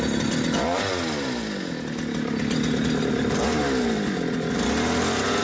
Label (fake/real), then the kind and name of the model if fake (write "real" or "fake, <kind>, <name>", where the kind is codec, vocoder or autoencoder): real